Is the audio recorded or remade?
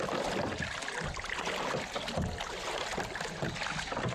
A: recorded